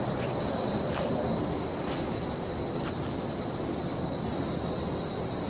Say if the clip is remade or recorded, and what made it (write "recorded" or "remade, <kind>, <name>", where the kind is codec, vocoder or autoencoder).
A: recorded